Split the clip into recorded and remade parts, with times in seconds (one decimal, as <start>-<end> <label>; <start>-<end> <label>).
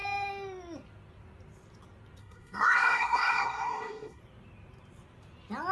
0.0-2.2 recorded; 2.2-4.2 remade; 4.2-5.7 recorded